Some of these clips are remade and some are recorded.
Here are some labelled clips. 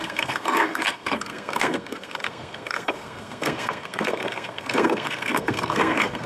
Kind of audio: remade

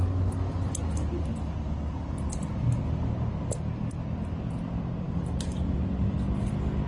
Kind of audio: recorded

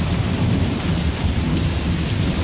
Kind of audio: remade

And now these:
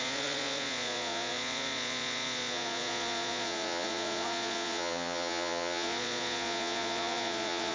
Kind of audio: remade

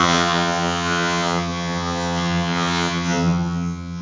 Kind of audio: remade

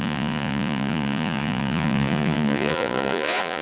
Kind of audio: remade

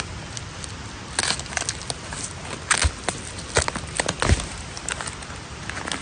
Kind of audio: recorded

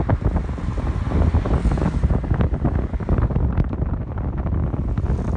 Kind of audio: recorded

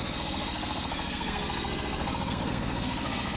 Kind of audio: remade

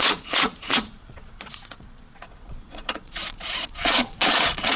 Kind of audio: remade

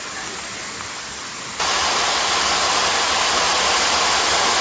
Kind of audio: recorded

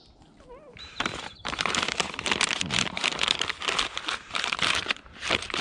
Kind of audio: remade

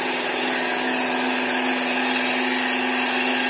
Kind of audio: recorded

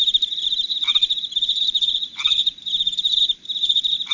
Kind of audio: remade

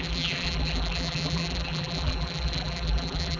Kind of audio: remade